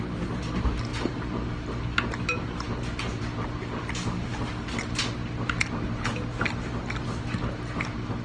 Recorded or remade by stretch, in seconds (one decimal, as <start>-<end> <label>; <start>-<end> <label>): 0.0-8.2 recorded